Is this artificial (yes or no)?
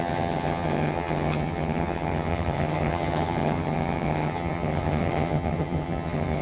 yes